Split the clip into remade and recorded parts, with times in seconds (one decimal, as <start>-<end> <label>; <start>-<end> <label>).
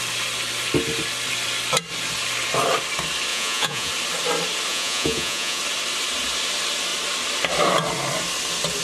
0.0-3.3 recorded; 3.3-3.9 remade; 3.9-4.7 recorded; 4.7-5.6 remade; 5.6-8.8 recorded